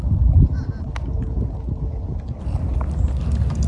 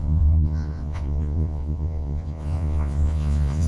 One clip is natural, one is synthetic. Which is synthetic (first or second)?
second